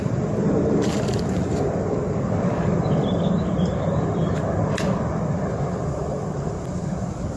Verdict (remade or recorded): remade